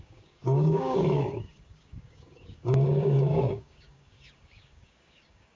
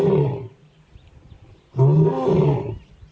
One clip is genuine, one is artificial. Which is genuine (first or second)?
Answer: second